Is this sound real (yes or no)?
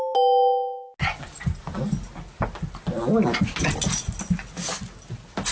yes